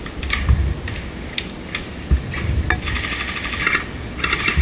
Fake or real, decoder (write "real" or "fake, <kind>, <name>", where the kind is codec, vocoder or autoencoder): real